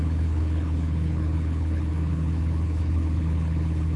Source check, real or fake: fake